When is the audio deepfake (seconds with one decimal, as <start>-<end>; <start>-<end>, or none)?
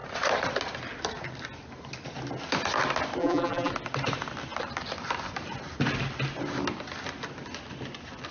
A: 3.2-3.7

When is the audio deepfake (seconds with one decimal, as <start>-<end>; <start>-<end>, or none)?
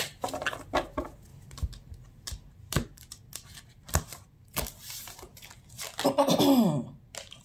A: none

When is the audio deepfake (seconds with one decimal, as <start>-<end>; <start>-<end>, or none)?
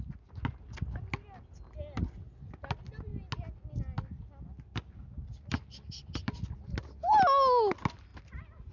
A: 8.1-8.7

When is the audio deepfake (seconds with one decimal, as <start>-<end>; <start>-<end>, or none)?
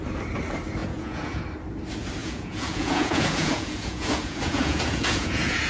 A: 0.8-1.4; 2.2-5.7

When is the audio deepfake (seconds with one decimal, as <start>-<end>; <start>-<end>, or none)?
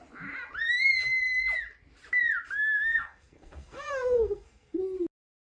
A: 2.6-4.8